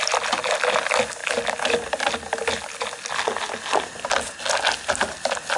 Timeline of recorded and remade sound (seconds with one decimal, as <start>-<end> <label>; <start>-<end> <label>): 0.0-5.6 recorded